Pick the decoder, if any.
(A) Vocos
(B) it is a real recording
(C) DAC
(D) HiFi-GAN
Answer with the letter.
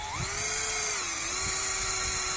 B